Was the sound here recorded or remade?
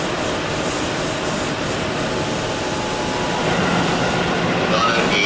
recorded